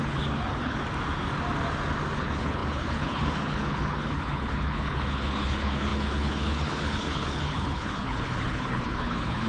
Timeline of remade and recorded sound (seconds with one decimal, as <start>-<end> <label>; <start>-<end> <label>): 0.0-0.8 remade; 0.8-2.2 recorded; 2.2-9.5 remade